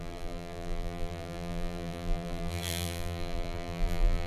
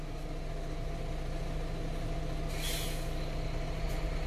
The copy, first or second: first